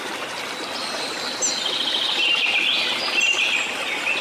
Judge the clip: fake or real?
real